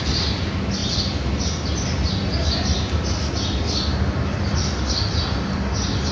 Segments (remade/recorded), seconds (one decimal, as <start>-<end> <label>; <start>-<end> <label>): 0.0-6.1 recorded